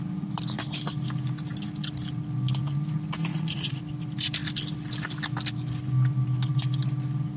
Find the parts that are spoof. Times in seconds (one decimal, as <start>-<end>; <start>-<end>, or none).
3.3-3.8